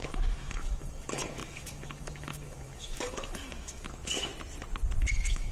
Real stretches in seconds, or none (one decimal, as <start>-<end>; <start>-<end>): 4.3-5.0